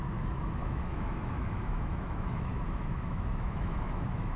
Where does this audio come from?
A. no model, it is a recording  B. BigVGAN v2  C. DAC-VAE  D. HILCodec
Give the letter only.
C